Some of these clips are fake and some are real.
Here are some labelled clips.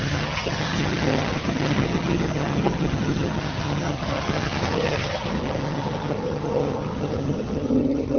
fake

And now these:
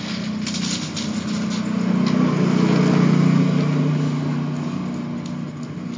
real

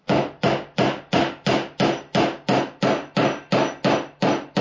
real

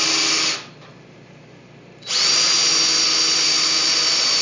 real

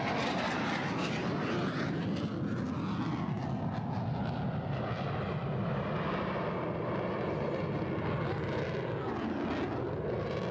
real